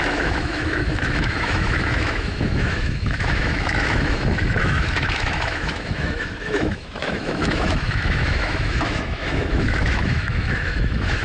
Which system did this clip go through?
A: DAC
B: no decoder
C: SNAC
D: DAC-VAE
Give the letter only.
D